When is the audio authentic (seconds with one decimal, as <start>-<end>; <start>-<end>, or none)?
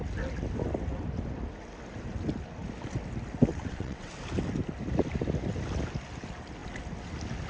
0.0-3.5; 4.1-7.5